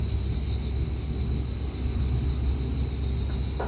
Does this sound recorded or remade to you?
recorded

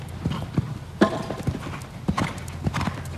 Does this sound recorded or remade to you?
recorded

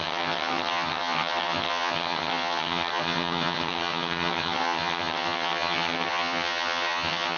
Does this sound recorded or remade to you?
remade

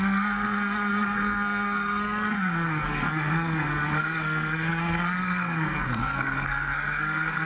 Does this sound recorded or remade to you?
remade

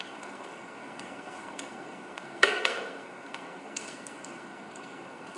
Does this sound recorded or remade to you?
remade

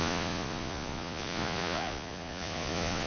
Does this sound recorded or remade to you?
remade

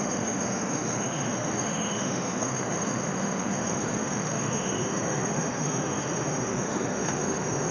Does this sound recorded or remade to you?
remade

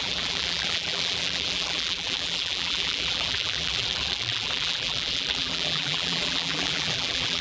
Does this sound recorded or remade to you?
remade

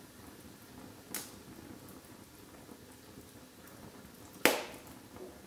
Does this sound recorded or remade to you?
recorded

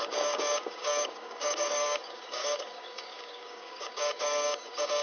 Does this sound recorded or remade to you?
remade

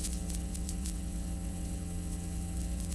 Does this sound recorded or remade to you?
remade